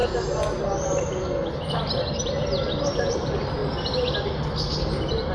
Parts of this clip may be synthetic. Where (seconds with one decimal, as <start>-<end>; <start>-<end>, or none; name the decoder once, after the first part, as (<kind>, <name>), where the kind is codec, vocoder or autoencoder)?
1.6-2.5 (vocoder, BigVGAN v2); 3.1-3.6